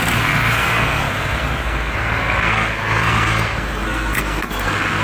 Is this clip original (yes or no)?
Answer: no